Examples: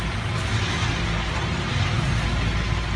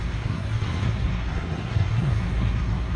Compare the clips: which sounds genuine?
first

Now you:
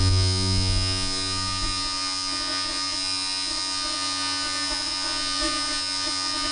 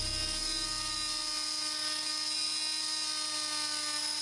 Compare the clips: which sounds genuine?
second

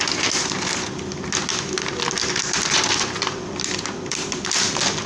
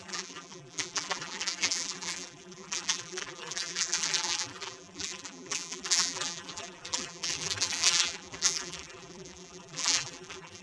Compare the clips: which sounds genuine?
first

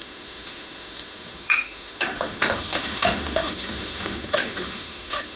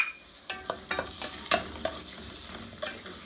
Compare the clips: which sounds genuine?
second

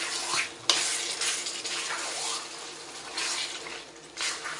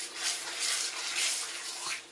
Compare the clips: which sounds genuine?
first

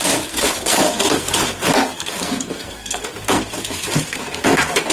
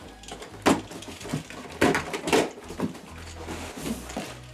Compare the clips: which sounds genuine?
second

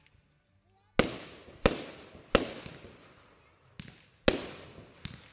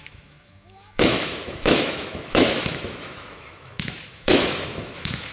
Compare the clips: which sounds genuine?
first